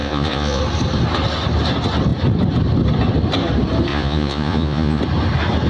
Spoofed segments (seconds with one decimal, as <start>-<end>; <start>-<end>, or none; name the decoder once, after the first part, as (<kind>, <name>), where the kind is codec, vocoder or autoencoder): 0.0-0.6 (vocoder, Vocos); 3.9-5.0